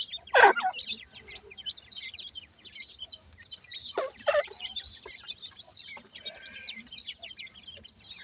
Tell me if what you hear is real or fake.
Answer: real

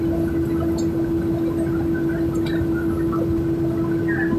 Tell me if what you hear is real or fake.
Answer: real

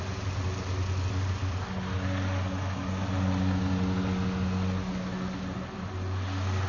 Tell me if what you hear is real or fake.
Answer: real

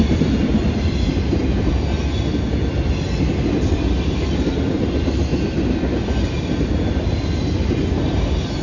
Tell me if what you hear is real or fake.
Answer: real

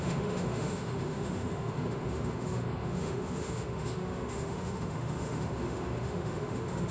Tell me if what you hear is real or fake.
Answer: fake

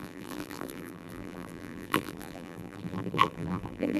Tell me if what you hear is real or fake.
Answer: fake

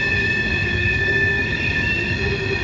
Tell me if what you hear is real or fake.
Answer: fake